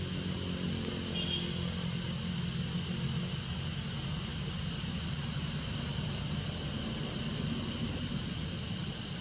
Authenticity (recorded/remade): recorded